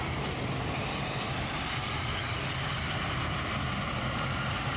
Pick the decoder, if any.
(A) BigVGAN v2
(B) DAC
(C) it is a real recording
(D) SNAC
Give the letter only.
C